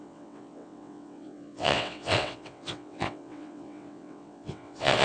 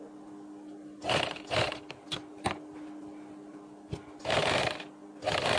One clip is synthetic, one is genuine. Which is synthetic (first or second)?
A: first